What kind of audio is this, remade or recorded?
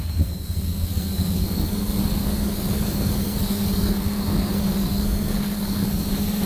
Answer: remade